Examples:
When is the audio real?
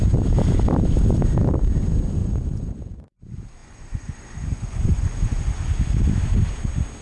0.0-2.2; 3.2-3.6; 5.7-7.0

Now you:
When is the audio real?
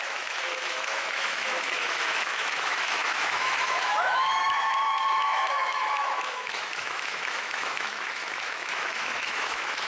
none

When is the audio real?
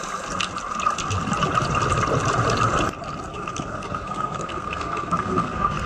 0.0-3.3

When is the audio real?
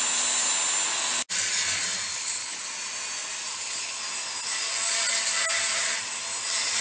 0.0-2.1; 2.6-3.5; 4.0-6.8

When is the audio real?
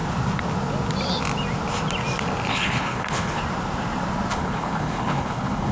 0.0-2.5; 3.4-4.3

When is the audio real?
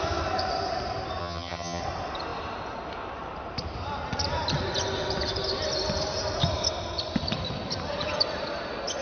0.0-1.2; 1.8-9.0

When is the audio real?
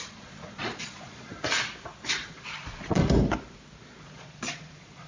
1.3-2.3; 3.0-4.0